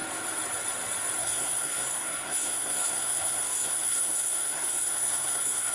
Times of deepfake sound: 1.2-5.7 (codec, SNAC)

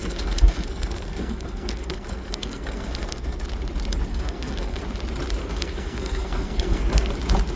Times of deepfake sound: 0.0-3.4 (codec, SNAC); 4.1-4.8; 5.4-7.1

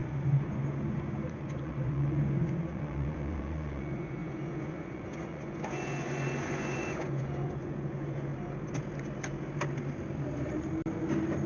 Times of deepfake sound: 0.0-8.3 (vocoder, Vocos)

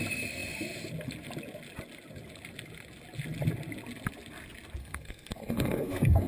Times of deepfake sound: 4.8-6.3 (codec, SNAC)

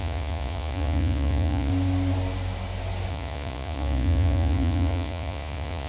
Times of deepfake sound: 0.0-1.7 (vocoder, Vocos); 3.1-5.9

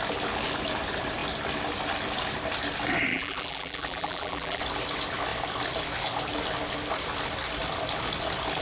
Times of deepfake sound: 3.1-4.6 (vocoder, BigVGAN v2)

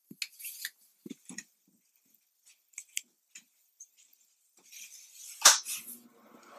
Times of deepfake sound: 0.9-1.7 (vocoder, BigVGAN v2)

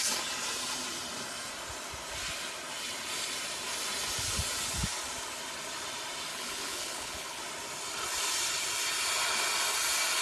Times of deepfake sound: 6.3-7.4 (codec, HILCodec)